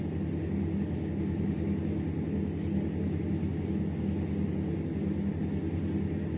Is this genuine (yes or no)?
yes